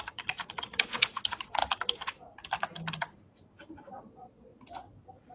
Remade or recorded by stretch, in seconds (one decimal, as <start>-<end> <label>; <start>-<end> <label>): 0.0-1.6 remade; 1.6-4.0 recorded; 4.0-4.5 remade; 4.5-5.3 recorded